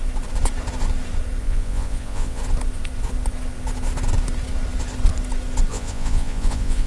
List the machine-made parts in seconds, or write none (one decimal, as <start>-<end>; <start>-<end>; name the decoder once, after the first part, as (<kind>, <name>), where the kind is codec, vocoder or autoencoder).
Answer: 1.4-2.4 (vocoder, Vocos); 5.7-6.9